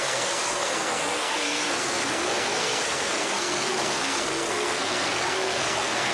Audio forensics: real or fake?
fake